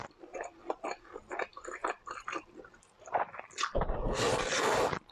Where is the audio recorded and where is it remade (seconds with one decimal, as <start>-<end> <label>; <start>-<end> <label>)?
0.0-5.1 recorded